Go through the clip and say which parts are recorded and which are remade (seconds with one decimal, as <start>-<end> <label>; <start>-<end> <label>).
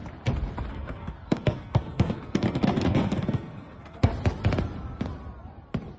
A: 0.0-0.7 recorded; 0.7-4.1 remade; 4.1-6.0 recorded